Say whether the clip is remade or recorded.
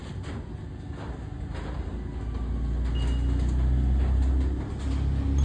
recorded